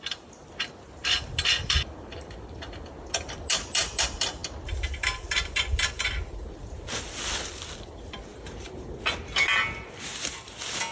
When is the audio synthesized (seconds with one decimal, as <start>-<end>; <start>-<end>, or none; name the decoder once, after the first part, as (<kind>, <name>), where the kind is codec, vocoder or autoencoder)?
1.6-2.6 (vocoder, BigVGAN v2); 8.3-8.9